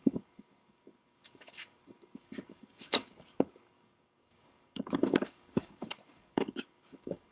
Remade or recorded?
remade